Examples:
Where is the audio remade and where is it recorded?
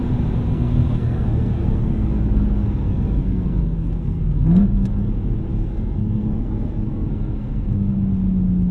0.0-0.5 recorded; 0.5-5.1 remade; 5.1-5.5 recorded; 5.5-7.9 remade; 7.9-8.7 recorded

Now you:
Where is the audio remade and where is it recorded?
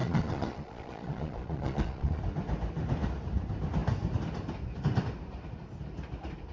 0.0-2.2 remade; 2.2-6.5 recorded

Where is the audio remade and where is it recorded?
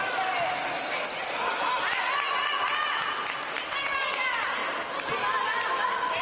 0.0-6.2 recorded